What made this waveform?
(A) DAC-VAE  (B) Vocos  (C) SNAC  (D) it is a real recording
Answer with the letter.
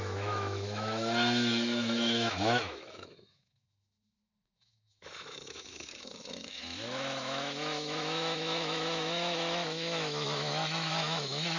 A